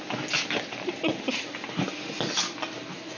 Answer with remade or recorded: recorded